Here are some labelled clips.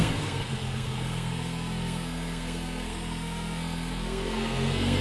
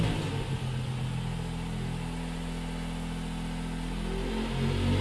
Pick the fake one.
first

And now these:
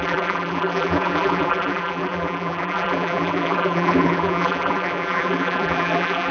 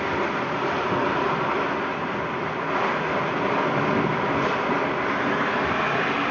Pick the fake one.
first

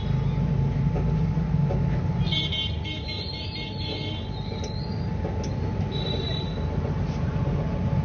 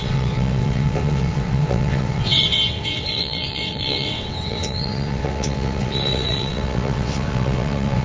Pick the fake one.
second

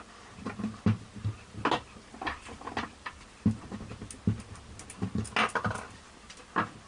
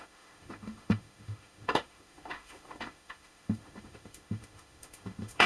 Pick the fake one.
second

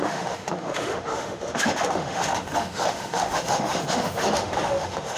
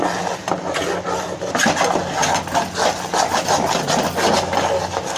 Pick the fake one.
first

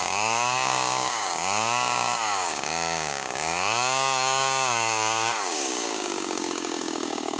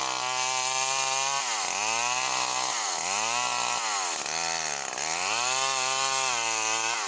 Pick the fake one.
first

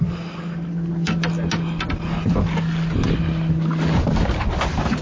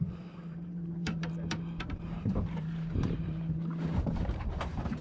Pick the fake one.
second